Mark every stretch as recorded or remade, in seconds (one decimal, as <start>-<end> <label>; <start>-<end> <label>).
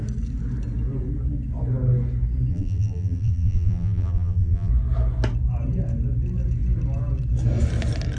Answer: 0.0-2.5 recorded; 2.5-4.7 remade; 4.7-8.2 recorded